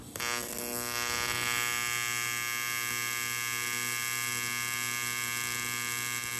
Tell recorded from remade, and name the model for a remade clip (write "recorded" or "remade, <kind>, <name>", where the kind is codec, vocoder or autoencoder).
recorded